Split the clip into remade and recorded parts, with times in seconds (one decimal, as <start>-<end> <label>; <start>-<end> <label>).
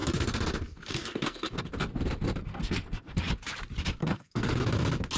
0.0-1.6 remade; 1.6-2.4 recorded; 2.4-3.1 remade; 3.1-4.0 recorded; 4.0-4.6 remade; 4.6-5.2 recorded